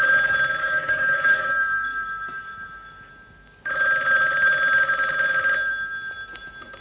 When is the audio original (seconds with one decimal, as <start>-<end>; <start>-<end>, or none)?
0.0-0.6; 3.1-6.8